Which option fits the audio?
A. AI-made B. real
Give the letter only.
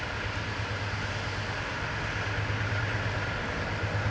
B